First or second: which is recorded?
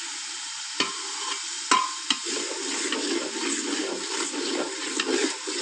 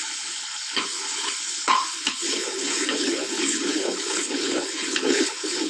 first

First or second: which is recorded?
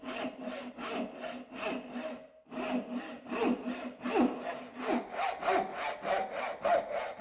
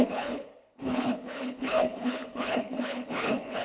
first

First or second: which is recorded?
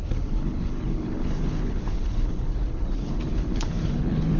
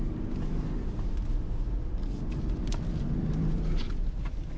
second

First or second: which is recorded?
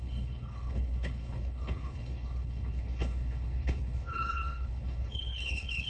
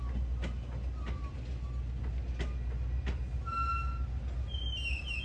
second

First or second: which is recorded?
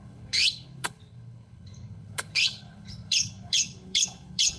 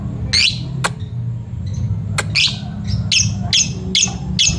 second